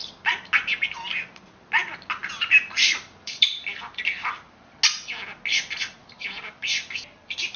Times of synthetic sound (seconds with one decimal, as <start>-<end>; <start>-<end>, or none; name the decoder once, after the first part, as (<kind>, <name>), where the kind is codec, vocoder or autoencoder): 2.2-4.0 (vocoder, BigVGAN v2); 6.0-7.0

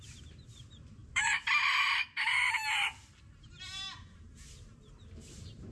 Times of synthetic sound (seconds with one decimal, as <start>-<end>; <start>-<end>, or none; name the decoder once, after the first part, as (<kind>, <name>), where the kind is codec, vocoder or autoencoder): 0.0-5.7 (vocoder, BigVGAN v2)